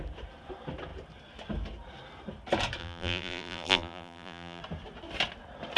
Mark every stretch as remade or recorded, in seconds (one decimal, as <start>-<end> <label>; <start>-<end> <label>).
0.0-2.8 recorded; 2.8-4.6 remade; 4.6-5.8 recorded